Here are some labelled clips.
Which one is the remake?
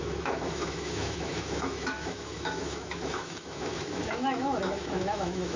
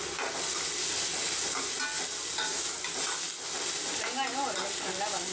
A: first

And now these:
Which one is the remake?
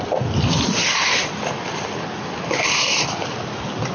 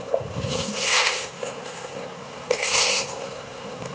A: second